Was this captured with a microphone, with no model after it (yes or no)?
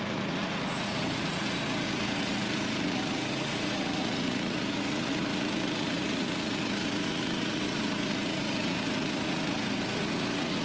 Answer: no